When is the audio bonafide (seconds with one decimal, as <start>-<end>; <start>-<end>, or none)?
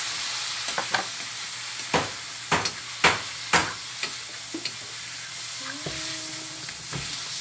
0.0-3.6; 4.5-7.4